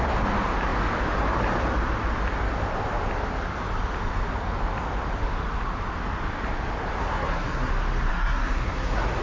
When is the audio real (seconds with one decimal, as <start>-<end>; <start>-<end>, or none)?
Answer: 0.0-7.0; 7.7-8.1